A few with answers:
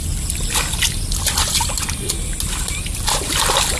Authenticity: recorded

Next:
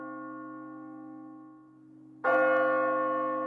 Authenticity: recorded